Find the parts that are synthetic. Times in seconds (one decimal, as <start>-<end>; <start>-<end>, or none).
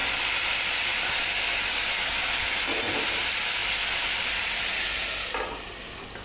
none